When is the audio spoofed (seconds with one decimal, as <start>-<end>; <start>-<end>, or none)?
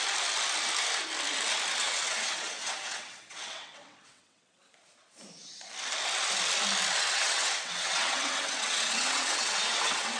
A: 1.8-4.6; 7.0-10.2